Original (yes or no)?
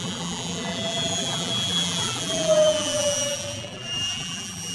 no